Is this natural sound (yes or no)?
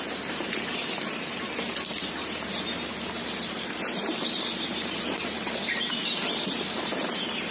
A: no